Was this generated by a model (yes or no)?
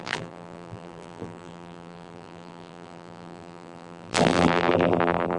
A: yes